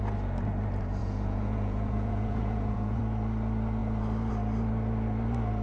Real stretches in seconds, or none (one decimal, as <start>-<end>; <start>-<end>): 0.0-1.0; 3.0-5.6